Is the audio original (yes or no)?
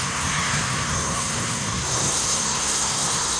no